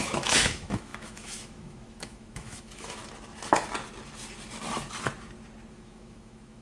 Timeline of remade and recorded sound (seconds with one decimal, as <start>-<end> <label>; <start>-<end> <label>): 0.0-3.0 remade; 3.0-5.7 recorded; 5.7-6.6 remade